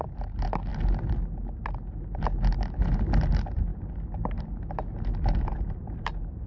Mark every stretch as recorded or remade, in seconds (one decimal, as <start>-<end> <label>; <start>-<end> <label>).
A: 0.0-5.1 recorded; 5.1-6.5 remade